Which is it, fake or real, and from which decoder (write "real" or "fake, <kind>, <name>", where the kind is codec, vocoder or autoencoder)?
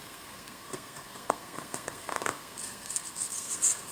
fake, codec, SNAC